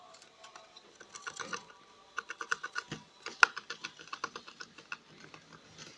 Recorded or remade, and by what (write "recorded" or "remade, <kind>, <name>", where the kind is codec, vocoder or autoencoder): recorded